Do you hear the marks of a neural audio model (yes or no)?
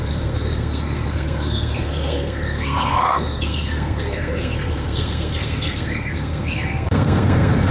yes